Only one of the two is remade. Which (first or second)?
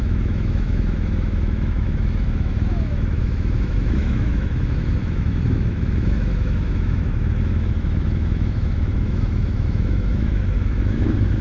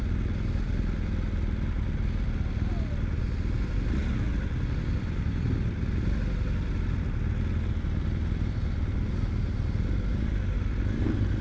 first